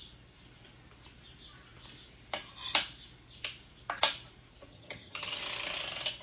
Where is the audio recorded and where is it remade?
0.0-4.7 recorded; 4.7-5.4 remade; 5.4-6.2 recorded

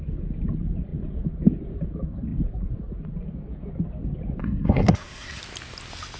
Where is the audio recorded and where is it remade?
0.0-4.4 recorded; 4.4-5.4 remade; 5.4-6.2 recorded

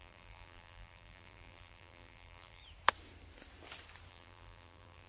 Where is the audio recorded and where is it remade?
0.0-2.6 remade; 2.6-4.1 recorded; 4.1-5.1 remade

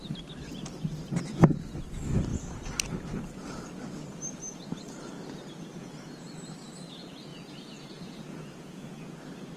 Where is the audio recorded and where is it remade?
0.0-7.3 recorded; 7.3-9.0 remade; 9.0-9.6 recorded

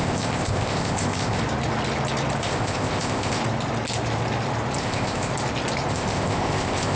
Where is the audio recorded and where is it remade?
0.0-1.4 remade; 1.4-2.4 recorded; 2.4-3.4 remade; 3.4-4.8 recorded; 4.8-5.3 remade; 5.3-5.9 recorded; 5.9-7.0 remade